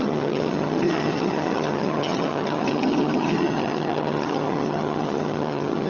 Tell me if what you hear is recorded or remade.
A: remade